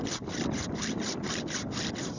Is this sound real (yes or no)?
yes